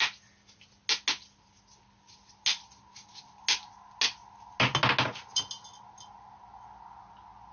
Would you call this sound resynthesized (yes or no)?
no